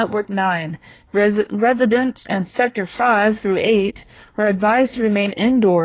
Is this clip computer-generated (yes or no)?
yes